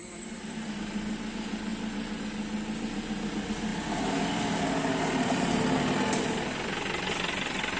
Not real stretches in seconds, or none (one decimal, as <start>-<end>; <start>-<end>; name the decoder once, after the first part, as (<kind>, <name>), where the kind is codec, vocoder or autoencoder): none